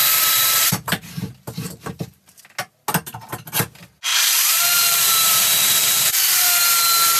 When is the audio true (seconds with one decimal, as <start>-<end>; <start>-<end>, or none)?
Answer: 2.4-4.1; 6.2-7.2